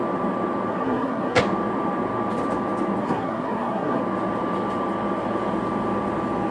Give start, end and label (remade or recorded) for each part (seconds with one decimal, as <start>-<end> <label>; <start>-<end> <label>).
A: 0.0-0.7 recorded; 0.7-1.4 remade; 1.4-3.0 recorded; 3.0-4.0 remade; 4.0-6.5 recorded